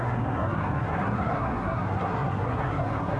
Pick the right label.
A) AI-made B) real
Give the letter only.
A